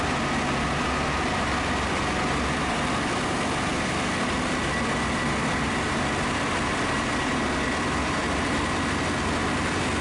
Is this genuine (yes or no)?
yes